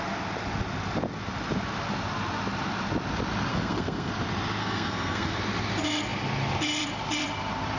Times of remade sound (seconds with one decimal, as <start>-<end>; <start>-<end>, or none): 3.5-4.1; 4.6-5.3